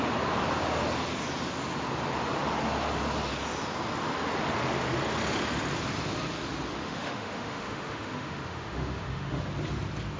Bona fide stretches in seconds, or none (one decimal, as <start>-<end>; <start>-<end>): 0.0-6.8; 9.4-10.2